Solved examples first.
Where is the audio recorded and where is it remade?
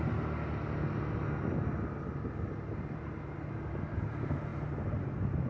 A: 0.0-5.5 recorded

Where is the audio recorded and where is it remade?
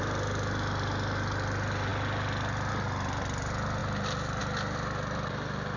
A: 0.0-5.8 recorded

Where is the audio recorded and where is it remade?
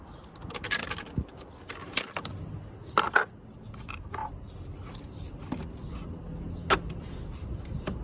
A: 0.0-8.0 recorded